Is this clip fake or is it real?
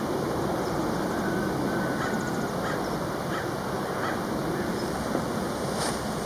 fake